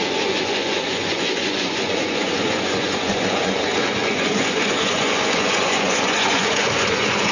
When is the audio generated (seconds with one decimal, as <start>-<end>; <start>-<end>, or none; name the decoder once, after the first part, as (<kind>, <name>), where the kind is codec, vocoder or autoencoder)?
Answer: 0.0-7.3 (vocoder, Vocos)